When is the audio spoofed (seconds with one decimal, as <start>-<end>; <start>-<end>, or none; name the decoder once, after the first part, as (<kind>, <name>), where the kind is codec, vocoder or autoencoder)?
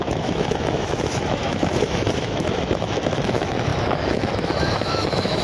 0.0-5.4 (autoencoder, DAC-VAE)